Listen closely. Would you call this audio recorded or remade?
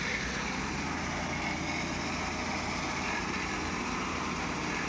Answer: recorded